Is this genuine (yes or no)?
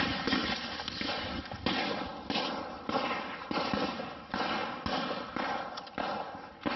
yes